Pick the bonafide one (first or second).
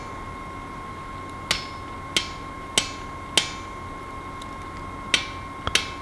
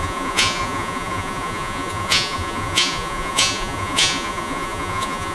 first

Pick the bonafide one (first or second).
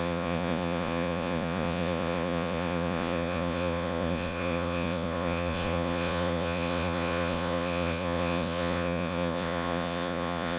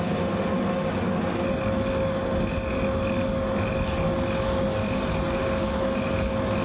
second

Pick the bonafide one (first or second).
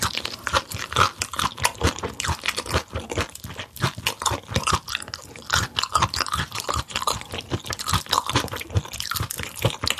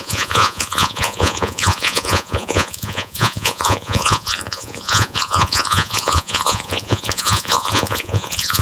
first